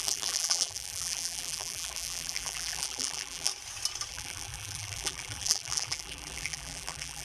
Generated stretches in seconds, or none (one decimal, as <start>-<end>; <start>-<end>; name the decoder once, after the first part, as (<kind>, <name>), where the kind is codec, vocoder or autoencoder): 0.0-3.5 (vocoder, BigVGAN v2); 4.1-7.2